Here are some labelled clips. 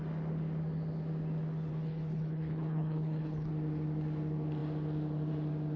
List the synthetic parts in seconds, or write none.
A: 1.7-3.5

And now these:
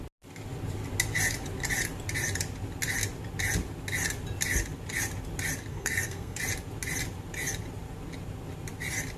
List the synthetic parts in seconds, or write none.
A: 5.7-6.4

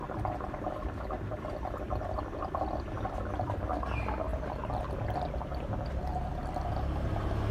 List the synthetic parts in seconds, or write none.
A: none

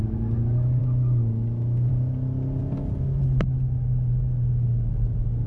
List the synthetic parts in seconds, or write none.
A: none